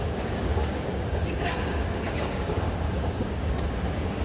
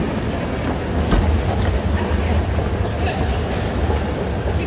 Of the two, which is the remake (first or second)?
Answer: first